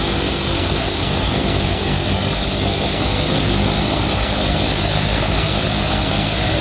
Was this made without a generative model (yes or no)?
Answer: no